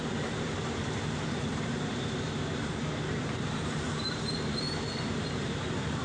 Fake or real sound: fake